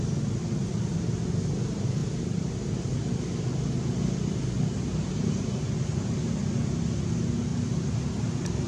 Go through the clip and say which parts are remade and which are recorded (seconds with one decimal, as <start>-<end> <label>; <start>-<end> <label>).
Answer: 0.0-8.7 recorded